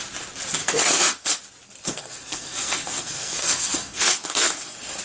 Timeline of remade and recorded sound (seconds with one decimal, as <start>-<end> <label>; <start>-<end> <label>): 0.0-0.6 recorded; 0.6-1.4 remade; 1.4-1.8 recorded; 1.8-5.0 remade